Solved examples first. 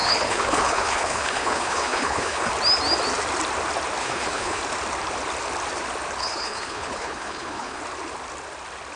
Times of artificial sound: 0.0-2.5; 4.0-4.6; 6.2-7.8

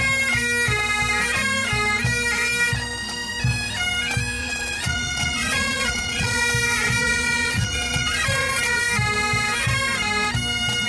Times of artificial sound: 4.4-6.4; 7.0-8.8

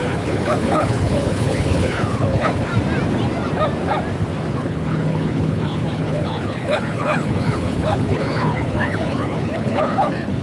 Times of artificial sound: 0.0-2.7; 4.5-10.4

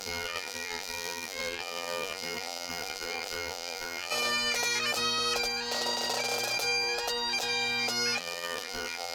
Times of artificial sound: 0.0-4.1; 8.2-9.1